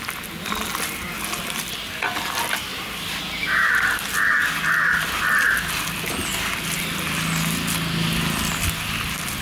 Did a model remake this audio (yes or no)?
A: no